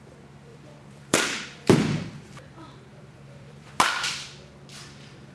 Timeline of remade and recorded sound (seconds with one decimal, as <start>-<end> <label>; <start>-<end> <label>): 0.0-0.5 recorded; 0.5-3.7 remade; 3.7-5.3 recorded